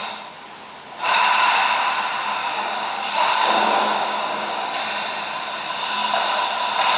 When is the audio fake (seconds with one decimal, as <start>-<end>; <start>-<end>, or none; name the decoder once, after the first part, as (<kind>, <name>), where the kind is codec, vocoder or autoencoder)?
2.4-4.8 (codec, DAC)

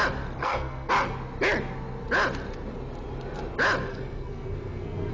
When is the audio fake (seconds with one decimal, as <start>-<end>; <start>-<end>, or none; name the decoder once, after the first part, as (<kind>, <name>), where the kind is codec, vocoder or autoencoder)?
0.4-0.9 (codec, SNAC); 3.9-5.1

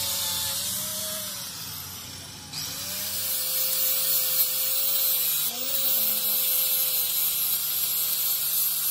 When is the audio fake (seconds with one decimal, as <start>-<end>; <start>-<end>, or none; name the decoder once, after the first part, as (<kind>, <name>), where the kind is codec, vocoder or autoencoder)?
0.9-1.5 (vocoder, Vocos)

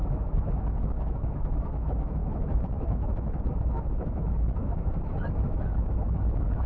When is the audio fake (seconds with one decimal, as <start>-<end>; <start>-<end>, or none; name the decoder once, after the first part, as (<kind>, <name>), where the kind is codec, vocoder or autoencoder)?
0.0-6.7 (autoencoder, DAC-VAE)

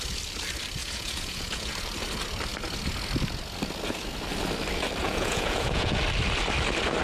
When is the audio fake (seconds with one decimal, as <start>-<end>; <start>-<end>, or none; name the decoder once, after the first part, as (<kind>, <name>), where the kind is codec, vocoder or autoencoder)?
0.8-1.7 (vocoder, Vocos); 5.0-6.0

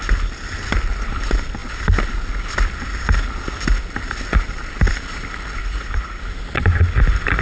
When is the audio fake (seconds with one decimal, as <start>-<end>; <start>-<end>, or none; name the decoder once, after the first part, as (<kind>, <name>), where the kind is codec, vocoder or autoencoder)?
5.6-6.2 (vocoder, Vocos)

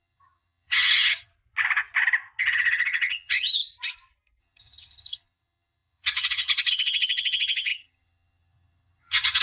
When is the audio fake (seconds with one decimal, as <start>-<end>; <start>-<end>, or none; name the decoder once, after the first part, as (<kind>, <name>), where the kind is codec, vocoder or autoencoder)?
0.0-1.3 (vocoder, HiFi-GAN); 2.4-3.6; 4.4-9.4

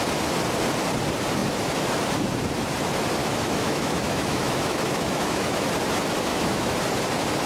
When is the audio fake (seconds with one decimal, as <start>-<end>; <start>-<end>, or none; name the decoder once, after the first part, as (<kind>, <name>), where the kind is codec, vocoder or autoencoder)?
3.2-5.7 (autoencoder, DAC-VAE); 6.3-6.8